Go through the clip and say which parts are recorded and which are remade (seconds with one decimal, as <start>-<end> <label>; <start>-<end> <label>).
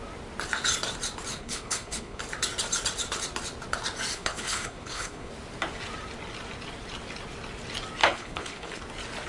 0.0-1.3 recorded; 1.3-2.2 remade; 2.2-4.1 recorded; 4.1-5.3 remade; 5.3-8.0 recorded; 8.0-8.8 remade; 8.8-9.3 recorded